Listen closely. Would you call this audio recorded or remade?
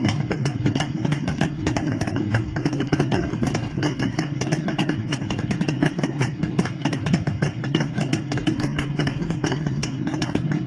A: remade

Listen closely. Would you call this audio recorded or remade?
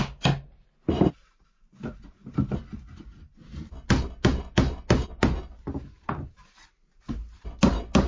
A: recorded